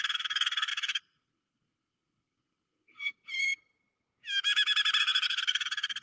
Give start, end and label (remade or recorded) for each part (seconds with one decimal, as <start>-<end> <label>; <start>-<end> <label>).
0.0-3.2 remade; 3.2-5.0 recorded; 5.0-6.0 remade